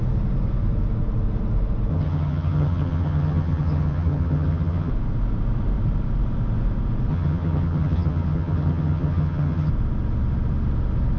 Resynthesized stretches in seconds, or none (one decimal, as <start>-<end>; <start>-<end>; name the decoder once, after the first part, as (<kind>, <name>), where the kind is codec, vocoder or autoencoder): 1.9-4.9 (vocoder, HiFi-GAN); 7.1-9.7